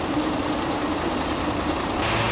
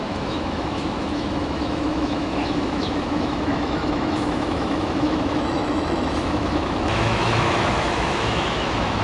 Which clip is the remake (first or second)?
second